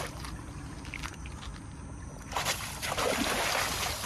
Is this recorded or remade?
recorded